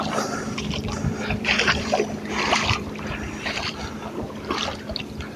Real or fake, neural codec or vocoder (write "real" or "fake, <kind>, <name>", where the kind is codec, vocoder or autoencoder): fake, vocoder, BigVGAN v2